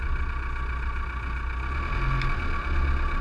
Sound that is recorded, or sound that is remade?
recorded